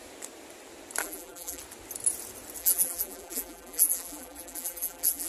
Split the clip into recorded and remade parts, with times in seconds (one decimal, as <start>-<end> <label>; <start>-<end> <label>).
0.0-1.0 recorded; 1.0-1.6 remade; 1.6-2.6 recorded; 2.6-5.3 remade